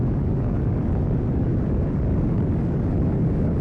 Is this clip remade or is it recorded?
remade